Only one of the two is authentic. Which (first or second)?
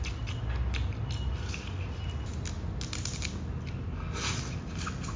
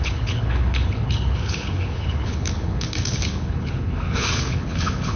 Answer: first